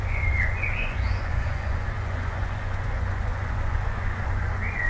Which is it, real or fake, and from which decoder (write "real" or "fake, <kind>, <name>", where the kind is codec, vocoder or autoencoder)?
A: fake, vocoder, Vocos